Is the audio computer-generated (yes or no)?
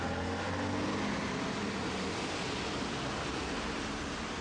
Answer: no